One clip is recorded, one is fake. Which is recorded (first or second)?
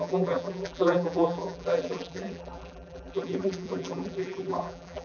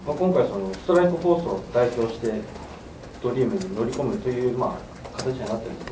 second